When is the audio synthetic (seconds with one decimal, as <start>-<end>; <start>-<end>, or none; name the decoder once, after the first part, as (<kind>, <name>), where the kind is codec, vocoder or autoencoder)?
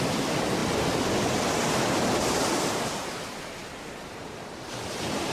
none